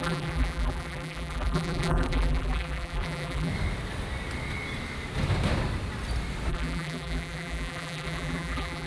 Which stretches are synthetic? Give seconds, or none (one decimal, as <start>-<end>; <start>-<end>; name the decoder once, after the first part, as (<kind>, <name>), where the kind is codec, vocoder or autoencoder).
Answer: 0.0-3.5 (vocoder, BigVGAN v2); 6.5-8.9